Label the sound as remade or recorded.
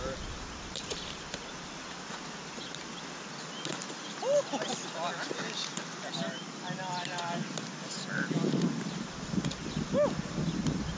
recorded